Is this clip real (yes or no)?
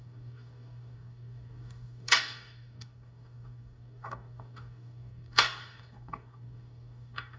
no